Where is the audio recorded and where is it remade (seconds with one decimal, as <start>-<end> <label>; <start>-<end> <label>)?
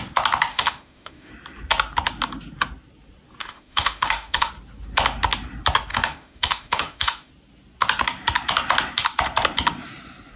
0.0-0.5 recorded; 0.5-1.3 remade; 1.3-3.4 recorded; 3.4-4.5 remade; 4.5-5.9 recorded; 5.9-7.3 remade; 7.3-10.4 recorded